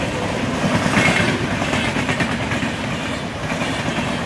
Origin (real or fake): fake